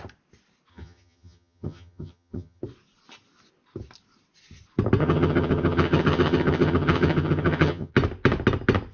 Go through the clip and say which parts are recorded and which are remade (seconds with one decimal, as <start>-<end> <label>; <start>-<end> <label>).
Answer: 0.0-0.7 recorded; 0.7-2.6 remade; 2.6-5.0 recorded; 5.0-7.9 remade; 7.9-8.9 recorded